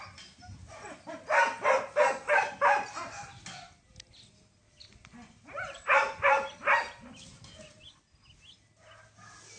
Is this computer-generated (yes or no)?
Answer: no